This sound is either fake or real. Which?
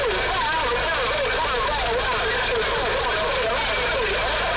real